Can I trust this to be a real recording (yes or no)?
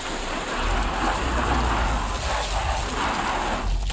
yes